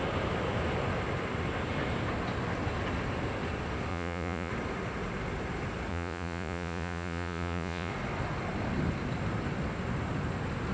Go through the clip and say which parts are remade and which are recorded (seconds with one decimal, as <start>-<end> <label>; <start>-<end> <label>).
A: 0.0-3.9 recorded; 3.9-4.5 remade; 4.5-5.9 recorded; 5.9-7.9 remade; 7.9-10.7 recorded